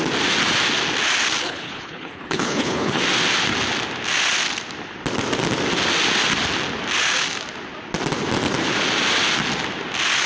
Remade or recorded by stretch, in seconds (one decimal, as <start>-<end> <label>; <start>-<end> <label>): 0.0-1.4 recorded; 1.4-3.0 remade; 3.0-10.3 recorded